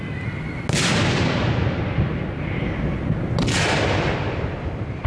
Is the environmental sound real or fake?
real